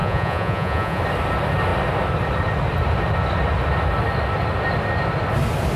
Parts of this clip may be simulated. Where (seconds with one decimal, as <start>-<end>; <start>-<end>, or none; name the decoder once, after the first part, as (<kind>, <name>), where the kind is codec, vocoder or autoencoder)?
0.0-1.0 (vocoder, Vocos)

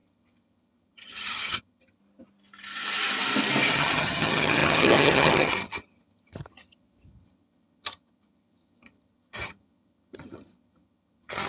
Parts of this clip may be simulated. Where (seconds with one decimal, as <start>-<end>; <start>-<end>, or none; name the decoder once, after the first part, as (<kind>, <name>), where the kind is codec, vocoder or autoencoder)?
0.0-2.0 (vocoder, HiFi-GAN); 3.7-11.5

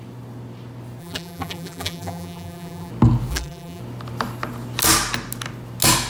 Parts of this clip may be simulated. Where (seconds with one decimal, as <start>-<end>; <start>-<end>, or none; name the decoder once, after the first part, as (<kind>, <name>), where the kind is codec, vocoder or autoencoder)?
1.0-2.9 (vocoder, BigVGAN v2); 3.3-3.8